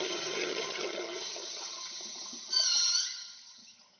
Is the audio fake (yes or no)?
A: yes